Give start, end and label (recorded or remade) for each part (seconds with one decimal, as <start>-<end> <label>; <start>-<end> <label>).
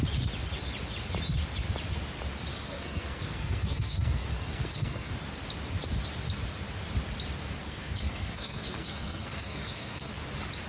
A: 0.0-2.5 recorded; 2.5-5.1 remade; 5.1-7.6 recorded; 7.6-10.1 remade; 10.1-10.7 recorded